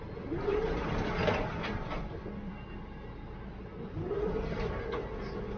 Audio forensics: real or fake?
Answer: real